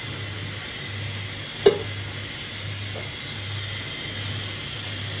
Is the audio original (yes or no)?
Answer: yes